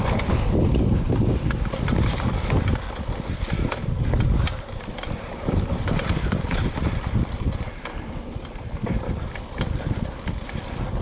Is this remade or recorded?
remade